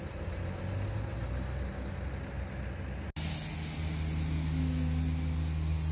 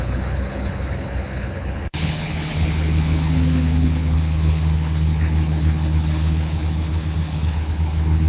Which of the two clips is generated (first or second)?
second